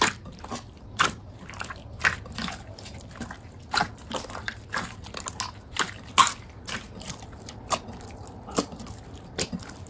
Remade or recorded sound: recorded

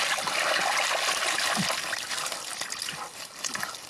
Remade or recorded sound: recorded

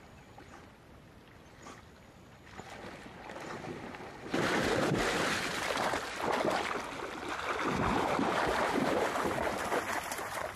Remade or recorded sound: recorded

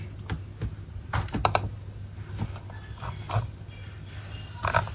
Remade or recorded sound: recorded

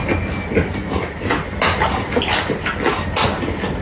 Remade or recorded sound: recorded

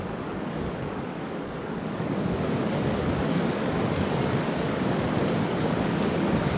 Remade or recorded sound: remade